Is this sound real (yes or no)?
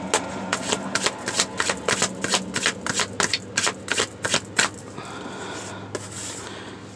yes